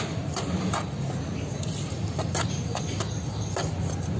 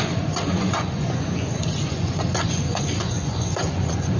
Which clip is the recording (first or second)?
first